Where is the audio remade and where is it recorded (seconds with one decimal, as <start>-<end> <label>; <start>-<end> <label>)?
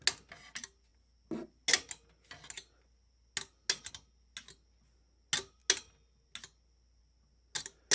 0.0-7.9 recorded